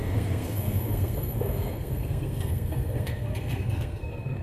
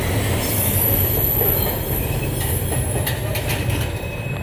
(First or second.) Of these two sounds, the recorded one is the second